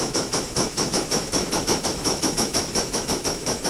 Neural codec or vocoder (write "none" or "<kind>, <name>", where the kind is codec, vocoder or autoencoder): autoencoder, DAC-VAE